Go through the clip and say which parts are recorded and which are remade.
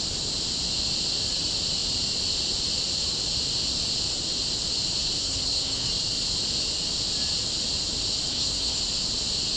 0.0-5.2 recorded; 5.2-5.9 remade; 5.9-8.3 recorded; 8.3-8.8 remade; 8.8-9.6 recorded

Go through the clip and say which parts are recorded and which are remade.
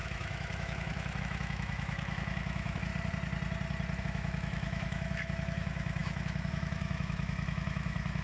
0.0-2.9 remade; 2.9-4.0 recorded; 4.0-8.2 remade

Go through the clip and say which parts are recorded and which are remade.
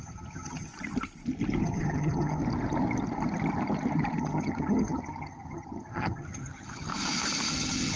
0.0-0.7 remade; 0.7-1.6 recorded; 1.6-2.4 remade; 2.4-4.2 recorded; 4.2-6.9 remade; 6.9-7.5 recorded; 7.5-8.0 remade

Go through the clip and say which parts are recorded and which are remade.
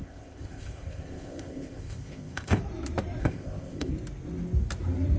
0.0-2.6 remade; 2.6-3.2 recorded; 3.2-3.9 remade; 3.9-5.2 recorded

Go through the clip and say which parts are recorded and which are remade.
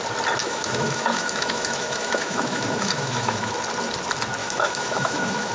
0.0-0.4 recorded; 0.4-3.5 remade; 3.5-4.4 recorded; 4.4-5.5 remade